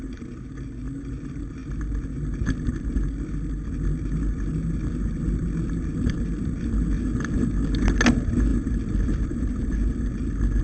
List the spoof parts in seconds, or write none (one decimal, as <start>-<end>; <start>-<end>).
none